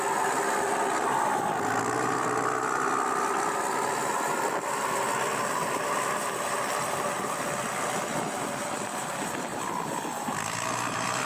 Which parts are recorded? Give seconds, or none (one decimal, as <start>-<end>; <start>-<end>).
0.0-11.3